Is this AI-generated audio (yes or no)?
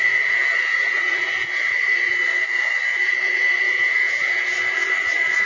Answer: yes